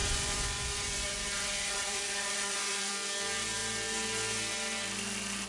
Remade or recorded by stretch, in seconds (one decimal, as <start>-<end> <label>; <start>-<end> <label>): 0.0-2.9 remade; 2.9-5.5 recorded